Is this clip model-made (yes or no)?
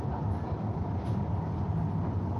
no